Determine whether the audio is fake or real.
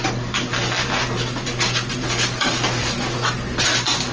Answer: real